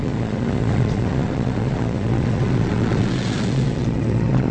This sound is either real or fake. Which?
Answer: fake